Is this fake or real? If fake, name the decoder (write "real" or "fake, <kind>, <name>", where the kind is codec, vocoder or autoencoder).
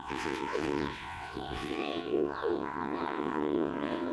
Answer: fake, vocoder, WaveNeXt